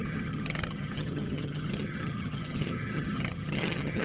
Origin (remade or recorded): remade